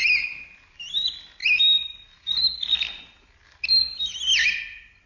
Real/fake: real